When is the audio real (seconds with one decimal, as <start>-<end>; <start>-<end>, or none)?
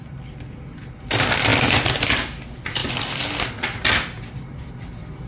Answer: 0.0-5.3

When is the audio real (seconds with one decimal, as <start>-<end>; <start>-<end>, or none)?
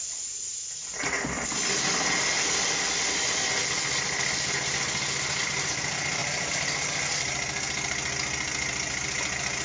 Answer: 0.0-9.6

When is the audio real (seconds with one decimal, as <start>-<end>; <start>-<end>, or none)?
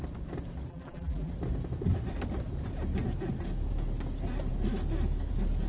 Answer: 0.0-0.7; 1.3-5.7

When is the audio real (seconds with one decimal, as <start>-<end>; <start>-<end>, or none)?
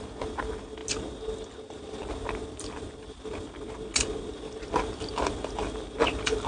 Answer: 0.0-6.5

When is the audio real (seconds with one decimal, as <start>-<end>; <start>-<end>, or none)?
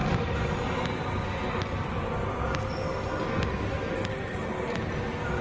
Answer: 0.0-5.4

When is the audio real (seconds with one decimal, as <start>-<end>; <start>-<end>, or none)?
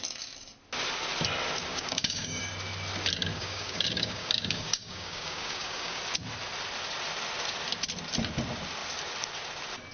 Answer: 0.0-1.7; 2.4-3.3; 6.0-9.9